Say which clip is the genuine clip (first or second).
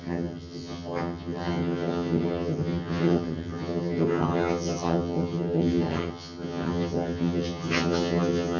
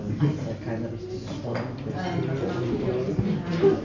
second